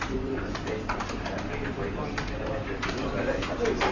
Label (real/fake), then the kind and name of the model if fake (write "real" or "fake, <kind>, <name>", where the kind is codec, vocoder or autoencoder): fake, vocoder, BigVGAN v2